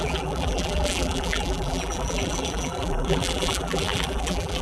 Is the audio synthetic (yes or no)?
yes